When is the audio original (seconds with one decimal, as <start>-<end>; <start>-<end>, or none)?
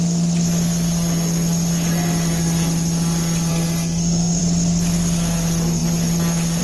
0.0-3.5; 4.4-6.6